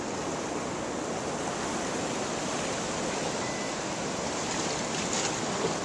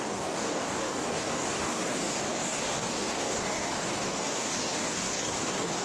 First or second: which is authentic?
first